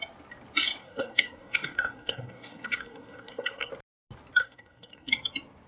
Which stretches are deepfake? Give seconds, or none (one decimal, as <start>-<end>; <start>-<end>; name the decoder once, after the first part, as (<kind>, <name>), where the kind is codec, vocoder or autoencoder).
0.8-3.7 (codec, SNAC); 4.4-5.1